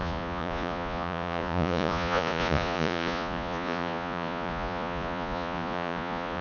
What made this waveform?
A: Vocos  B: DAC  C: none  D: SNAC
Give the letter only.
A